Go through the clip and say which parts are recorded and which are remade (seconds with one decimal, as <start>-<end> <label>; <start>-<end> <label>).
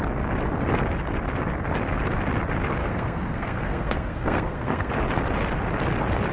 0.0-2.8 recorded; 2.8-4.9 remade; 4.9-6.3 recorded